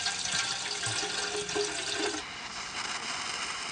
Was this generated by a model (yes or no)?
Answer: no